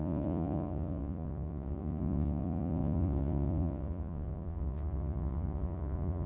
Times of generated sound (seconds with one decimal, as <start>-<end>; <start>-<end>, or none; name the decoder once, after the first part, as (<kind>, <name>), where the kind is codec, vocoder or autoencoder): 0.0-6.3 (vocoder, Vocos)